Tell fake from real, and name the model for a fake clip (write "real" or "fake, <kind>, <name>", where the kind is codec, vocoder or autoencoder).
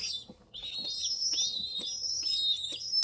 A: real